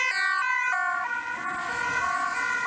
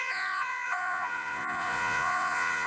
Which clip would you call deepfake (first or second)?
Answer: second